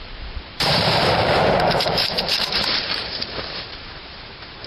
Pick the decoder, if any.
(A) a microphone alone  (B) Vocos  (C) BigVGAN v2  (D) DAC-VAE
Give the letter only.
C